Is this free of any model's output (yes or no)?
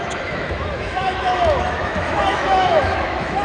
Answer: no